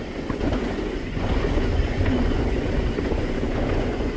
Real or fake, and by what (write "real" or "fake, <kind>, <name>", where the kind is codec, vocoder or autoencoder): fake, vocoder, Vocos